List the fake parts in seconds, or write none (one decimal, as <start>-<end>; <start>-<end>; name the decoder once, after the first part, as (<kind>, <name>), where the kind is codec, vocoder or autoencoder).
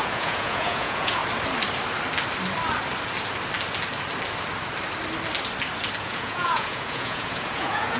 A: 0.0-1.2 (vocoder, Vocos); 6.0-8.0